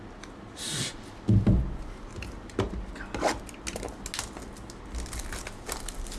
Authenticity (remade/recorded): recorded